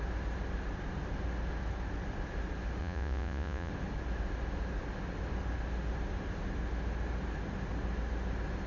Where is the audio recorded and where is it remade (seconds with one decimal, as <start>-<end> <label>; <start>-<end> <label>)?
0.0-2.8 recorded; 2.8-3.7 remade; 3.7-8.7 recorded